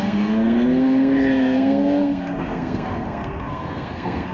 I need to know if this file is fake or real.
fake